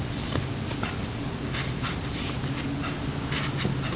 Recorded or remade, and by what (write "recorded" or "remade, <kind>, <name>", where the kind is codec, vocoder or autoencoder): recorded